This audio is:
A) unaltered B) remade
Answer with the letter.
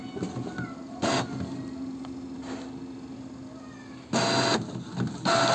A